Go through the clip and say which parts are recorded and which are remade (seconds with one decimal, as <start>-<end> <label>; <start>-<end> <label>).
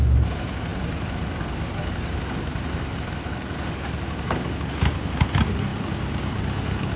0.0-7.0 recorded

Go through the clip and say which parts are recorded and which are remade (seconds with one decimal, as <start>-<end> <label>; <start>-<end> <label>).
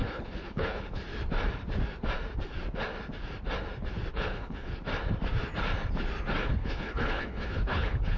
0.0-1.0 remade; 1.0-4.1 recorded; 4.1-4.8 remade; 4.8-6.4 recorded; 6.4-8.2 remade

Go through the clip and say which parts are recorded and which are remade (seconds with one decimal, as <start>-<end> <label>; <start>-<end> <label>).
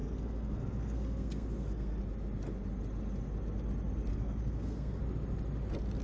0.0-2.0 remade; 2.0-4.1 recorded; 4.1-5.0 remade; 5.0-6.0 recorded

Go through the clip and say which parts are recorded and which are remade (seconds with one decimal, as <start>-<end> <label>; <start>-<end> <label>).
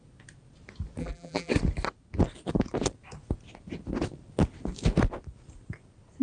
0.0-1.0 recorded; 1.0-1.5 remade; 1.5-6.2 recorded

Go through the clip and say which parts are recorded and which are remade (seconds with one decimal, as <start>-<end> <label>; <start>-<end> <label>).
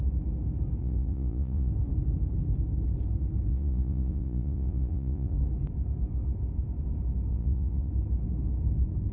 0.0-0.8 recorded; 0.8-1.7 remade; 1.7-3.5 recorded; 3.5-5.4 remade; 5.4-7.3 recorded; 7.3-7.9 remade; 7.9-9.1 recorded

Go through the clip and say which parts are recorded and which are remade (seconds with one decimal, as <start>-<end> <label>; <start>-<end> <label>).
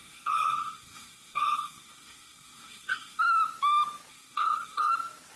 0.0-3.2 remade; 3.2-4.1 recorded; 4.1-4.9 remade; 4.9-5.4 recorded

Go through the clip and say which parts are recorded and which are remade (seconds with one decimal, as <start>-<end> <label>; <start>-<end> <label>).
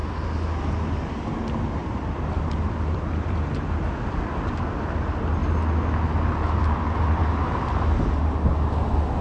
0.0-1.8 recorded; 1.8-3.8 remade; 3.8-9.2 recorded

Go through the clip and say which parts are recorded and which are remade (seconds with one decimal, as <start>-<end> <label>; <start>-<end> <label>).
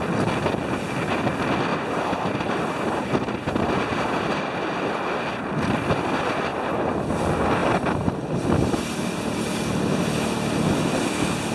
0.0-1.7 recorded; 1.7-4.3 remade; 4.3-6.5 recorded; 6.5-7.1 remade; 7.1-7.6 recorded; 7.6-8.1 remade; 8.1-11.5 recorded